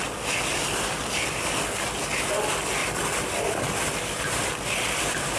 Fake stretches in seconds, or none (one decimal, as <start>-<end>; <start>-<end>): none